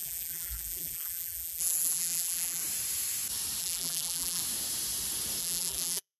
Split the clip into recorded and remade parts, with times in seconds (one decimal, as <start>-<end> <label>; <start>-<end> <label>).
0.0-2.6 remade; 2.6-3.6 recorded; 3.6-4.4 remade; 4.4-5.4 recorded; 5.4-6.2 remade